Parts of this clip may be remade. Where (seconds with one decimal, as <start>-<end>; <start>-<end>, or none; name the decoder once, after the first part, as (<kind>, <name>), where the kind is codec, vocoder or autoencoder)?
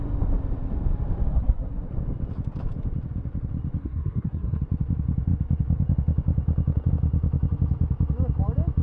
1.3-1.9 (codec, SNAC); 3.8-4.6